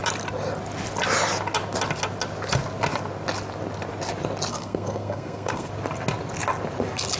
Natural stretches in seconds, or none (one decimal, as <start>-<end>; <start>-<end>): 0.0-4.5; 5.7-7.2